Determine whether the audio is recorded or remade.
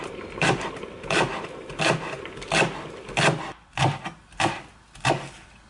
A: recorded